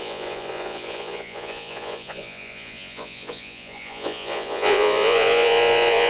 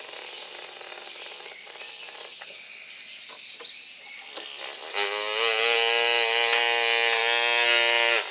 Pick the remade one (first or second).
first